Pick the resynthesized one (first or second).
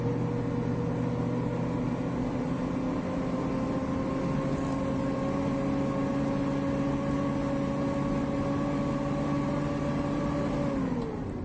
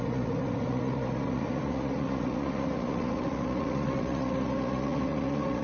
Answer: second